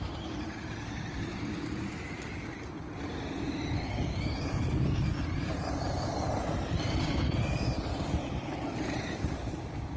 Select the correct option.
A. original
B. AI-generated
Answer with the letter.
A